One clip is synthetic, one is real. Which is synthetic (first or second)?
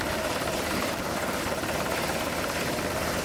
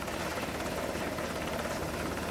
first